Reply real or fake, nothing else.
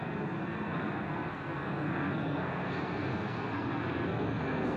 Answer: fake